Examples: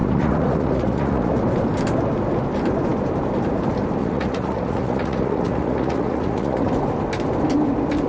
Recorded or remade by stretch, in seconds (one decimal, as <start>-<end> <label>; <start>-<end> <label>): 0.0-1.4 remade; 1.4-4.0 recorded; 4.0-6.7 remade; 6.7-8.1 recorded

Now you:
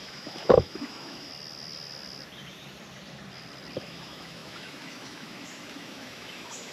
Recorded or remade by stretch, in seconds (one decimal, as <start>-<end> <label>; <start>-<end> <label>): 0.0-1.3 remade; 1.3-3.8 recorded; 3.8-6.7 remade

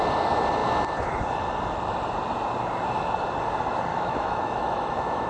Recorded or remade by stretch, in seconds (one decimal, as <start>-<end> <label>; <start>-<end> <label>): 0.0-3.9 recorded; 3.9-5.3 remade